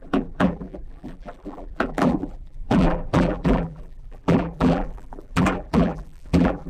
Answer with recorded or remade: remade